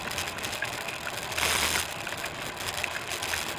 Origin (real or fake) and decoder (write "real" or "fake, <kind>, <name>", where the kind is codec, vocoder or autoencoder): real